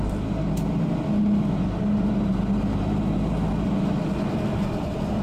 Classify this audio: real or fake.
real